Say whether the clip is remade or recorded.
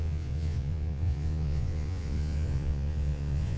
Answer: remade